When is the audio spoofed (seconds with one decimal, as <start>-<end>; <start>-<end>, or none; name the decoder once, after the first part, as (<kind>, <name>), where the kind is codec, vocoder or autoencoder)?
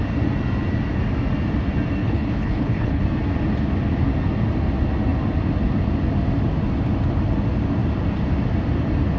2.0-3.0 (codec, HILCodec)